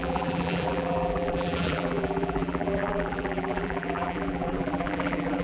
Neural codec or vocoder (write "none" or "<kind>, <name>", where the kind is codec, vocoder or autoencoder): vocoder, BigVGAN v2